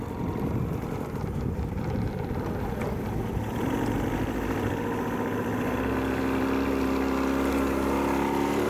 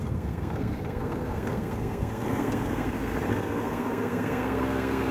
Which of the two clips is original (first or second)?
first